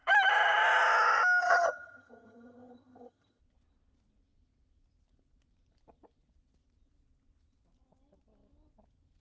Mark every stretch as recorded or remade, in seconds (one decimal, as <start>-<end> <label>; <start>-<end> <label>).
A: 0.0-1.4 recorded; 1.4-3.4 remade; 3.4-9.2 recorded